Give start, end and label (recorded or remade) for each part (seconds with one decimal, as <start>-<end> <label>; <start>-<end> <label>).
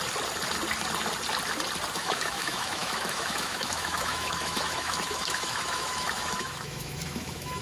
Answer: 0.0-1.9 recorded; 1.9-7.6 remade